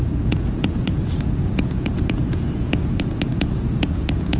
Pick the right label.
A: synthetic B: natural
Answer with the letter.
A